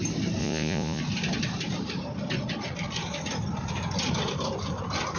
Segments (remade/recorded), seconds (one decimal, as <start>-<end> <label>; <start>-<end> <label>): 0.0-0.4 recorded; 0.4-1.0 remade; 1.0-5.2 recorded

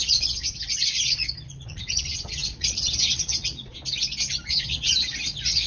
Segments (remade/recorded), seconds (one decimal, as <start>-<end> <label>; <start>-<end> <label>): 0.0-3.8 remade; 3.8-4.4 recorded; 4.4-5.7 remade

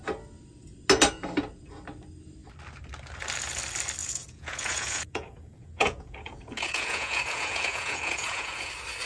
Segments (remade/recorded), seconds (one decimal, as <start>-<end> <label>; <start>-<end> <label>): 0.0-4.0 recorded; 4.0-8.7 remade; 8.7-9.1 recorded

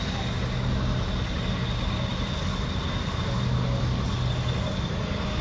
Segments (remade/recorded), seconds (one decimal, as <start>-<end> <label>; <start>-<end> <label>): 0.0-5.4 recorded

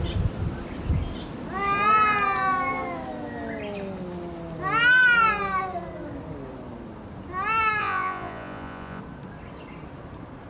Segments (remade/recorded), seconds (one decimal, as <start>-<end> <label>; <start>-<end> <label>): 0.0-7.8 recorded; 7.8-9.0 remade; 9.0-10.5 recorded

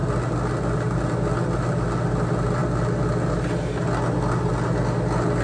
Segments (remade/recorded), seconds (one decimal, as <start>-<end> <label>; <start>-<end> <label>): 0.0-5.4 recorded